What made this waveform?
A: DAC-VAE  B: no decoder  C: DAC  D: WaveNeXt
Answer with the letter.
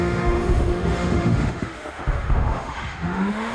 A